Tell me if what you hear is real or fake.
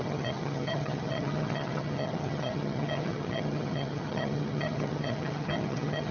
fake